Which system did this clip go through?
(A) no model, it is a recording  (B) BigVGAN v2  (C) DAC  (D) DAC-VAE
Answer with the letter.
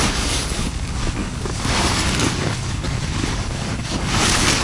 C